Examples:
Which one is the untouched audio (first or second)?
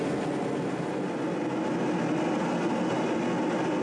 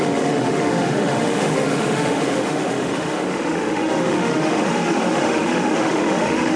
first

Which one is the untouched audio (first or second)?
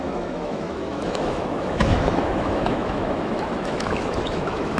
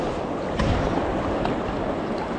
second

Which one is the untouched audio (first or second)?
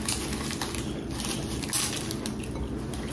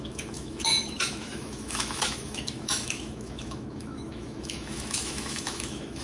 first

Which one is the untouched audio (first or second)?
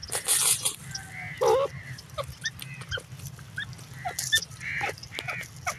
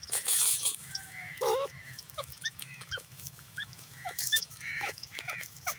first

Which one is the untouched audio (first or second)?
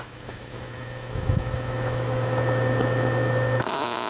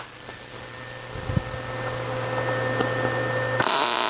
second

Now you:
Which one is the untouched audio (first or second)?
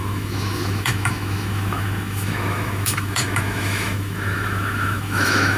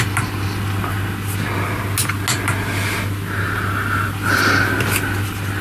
second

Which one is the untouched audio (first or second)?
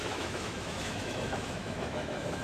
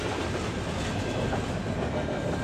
second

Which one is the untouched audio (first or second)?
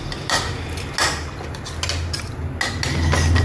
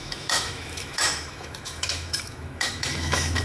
first